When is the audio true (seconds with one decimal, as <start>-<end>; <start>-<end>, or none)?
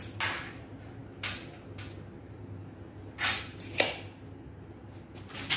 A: 0.0-5.6